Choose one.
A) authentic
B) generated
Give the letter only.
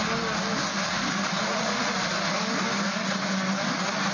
A